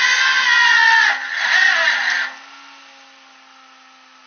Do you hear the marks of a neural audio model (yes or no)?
no